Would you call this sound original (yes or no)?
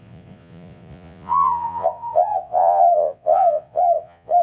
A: no